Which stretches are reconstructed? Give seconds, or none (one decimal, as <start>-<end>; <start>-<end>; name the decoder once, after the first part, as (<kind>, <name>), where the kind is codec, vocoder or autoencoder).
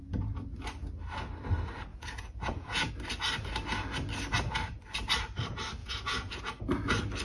1.9-2.9 (vocoder, Vocos); 5.8-6.4